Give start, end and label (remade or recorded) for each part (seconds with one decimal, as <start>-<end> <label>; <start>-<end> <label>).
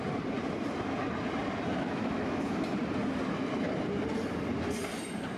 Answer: 0.0-1.7 recorded; 1.7-2.6 remade; 2.6-5.4 recorded